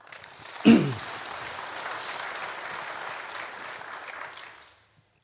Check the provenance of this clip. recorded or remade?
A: recorded